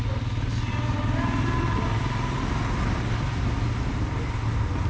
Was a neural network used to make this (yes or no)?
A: no